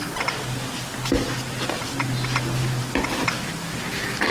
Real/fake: real